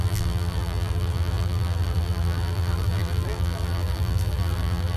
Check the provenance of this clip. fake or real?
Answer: fake